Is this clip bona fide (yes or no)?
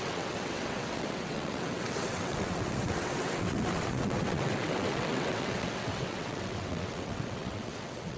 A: no